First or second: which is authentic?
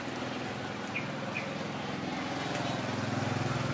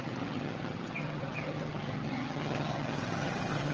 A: first